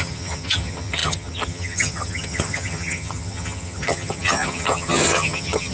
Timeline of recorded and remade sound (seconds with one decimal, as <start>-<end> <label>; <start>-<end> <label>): 0.0-5.7 remade